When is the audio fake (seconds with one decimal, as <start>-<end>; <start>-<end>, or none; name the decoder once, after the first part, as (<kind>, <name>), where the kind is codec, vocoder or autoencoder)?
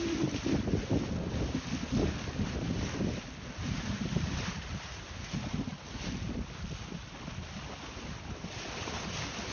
none